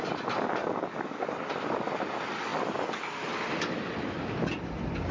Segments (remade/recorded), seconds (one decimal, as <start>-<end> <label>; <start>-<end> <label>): 0.0-0.6 recorded; 0.6-1.3 remade; 1.3-5.1 recorded